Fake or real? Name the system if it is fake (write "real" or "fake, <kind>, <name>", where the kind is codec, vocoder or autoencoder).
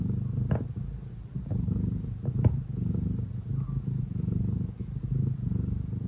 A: real